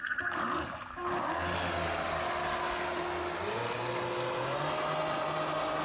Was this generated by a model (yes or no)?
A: no